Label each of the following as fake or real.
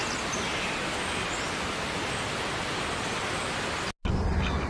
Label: real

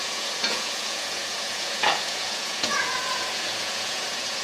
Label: fake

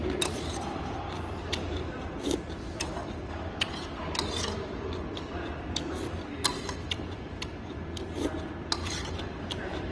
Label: fake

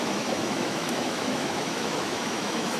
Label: fake